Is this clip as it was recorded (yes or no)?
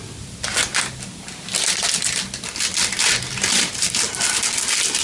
yes